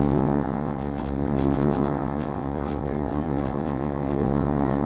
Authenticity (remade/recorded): remade